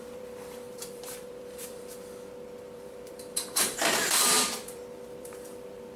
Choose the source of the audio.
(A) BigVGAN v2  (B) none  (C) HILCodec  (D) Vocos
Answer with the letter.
A